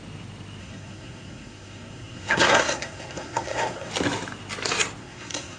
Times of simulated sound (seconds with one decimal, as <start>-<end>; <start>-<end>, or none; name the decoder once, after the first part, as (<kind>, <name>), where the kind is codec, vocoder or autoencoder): 0.6-3.9 (codec, SNAC); 5.0-5.6